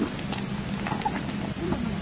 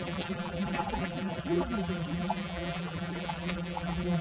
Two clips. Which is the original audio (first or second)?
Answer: first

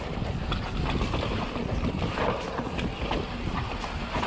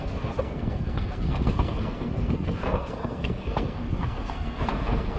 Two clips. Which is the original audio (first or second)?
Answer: first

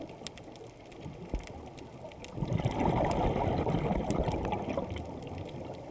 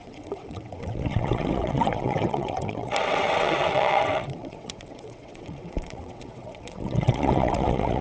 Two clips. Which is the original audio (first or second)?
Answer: first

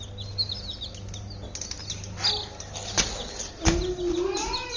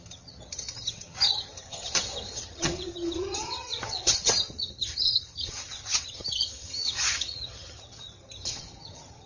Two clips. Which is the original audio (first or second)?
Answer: first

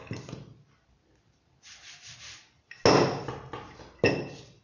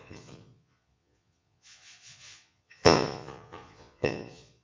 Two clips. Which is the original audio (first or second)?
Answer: first